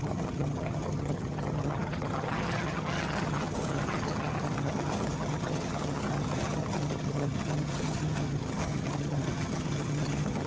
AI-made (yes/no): yes